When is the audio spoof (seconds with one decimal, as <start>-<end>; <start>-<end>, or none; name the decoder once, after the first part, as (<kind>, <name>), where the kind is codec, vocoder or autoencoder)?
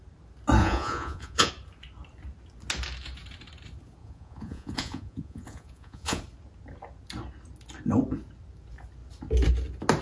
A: 0.6-1.5 (vocoder, Vocos); 4.0-6.2